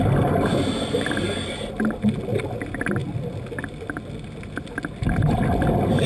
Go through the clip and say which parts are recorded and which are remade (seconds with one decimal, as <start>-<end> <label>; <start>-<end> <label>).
0.0-6.1 recorded